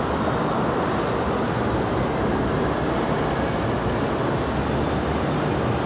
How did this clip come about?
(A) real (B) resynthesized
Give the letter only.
A